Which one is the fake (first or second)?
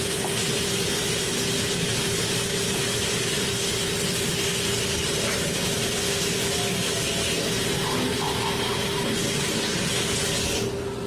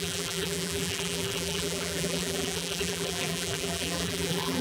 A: second